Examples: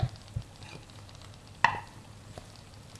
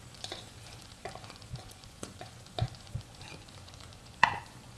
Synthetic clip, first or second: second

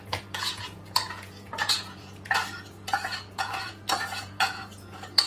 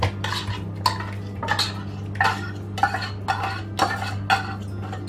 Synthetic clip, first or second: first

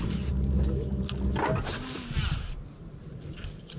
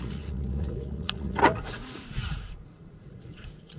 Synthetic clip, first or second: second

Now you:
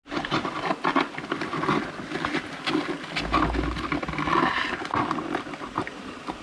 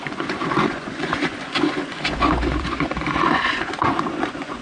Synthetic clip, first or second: second